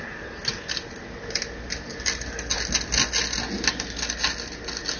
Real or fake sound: real